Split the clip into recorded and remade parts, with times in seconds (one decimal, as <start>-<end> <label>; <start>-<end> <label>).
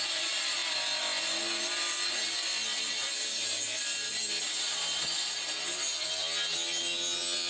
0.0-7.5 recorded